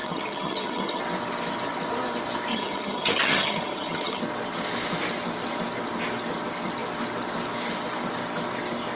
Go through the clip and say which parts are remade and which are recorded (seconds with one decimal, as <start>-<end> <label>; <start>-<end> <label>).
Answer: 0.0-1.0 remade; 1.0-2.5 recorded; 2.5-4.2 remade; 4.2-9.0 recorded